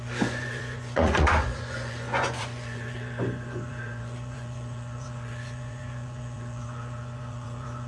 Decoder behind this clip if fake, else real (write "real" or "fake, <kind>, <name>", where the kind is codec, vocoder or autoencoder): fake, vocoder, Vocos